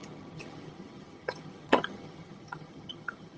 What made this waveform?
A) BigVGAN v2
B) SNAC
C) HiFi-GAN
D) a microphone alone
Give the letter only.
C